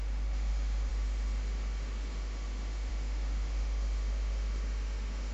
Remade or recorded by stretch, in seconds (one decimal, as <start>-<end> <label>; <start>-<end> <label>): 0.0-5.3 remade